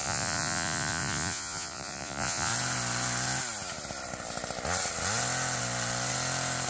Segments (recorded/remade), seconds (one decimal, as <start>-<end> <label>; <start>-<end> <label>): 0.0-2.5 remade; 2.5-6.7 recorded